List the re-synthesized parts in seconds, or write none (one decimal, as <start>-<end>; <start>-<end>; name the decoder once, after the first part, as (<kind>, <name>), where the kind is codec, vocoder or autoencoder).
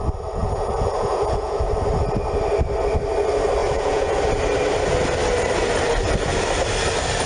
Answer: 0.4-1.7 (vocoder, Vocos); 3.6-4.2